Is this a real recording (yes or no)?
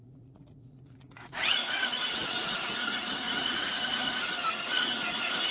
no